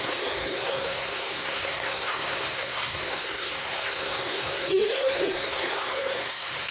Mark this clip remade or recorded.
remade